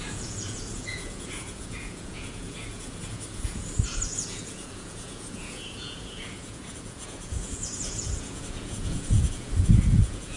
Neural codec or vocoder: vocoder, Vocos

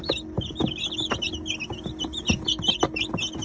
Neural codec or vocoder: none